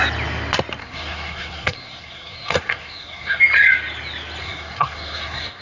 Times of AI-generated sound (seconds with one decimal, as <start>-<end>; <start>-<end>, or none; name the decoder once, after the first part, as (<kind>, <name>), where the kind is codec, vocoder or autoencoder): 0.8-3.4 (codec, SNAC); 4.4-5.6